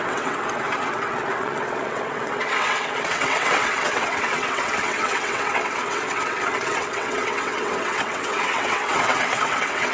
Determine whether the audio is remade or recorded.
remade